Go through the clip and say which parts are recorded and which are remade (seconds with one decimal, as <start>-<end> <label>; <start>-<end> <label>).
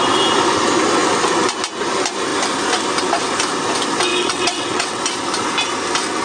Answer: 0.0-4.1 recorded; 4.1-5.0 remade; 5.0-6.2 recorded